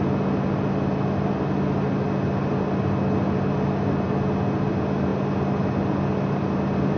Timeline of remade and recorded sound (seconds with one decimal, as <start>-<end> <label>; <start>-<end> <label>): 0.0-7.0 recorded